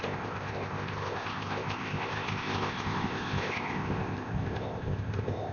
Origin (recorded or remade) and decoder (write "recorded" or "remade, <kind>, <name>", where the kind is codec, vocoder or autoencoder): remade, codec, ZipCodec